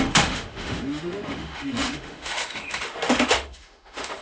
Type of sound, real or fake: fake